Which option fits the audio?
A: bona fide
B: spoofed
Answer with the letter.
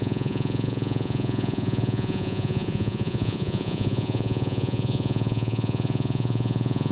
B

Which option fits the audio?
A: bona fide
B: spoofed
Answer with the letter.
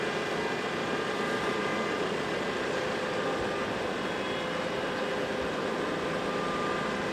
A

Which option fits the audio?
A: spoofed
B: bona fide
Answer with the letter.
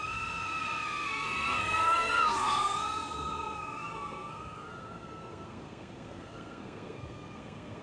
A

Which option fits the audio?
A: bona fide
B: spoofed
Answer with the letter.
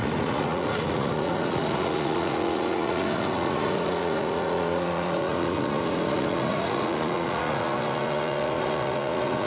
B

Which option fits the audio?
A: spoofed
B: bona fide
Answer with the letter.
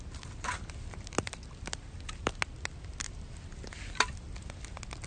B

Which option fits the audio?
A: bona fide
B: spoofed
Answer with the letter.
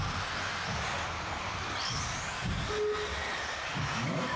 A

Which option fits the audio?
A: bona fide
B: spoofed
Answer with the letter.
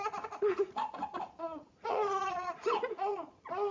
B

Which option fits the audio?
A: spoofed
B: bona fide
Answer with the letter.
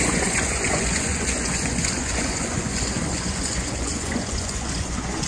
A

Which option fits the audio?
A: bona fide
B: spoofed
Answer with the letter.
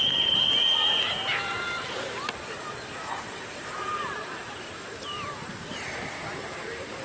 B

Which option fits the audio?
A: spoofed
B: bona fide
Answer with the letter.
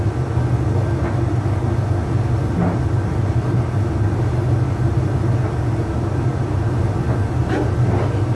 B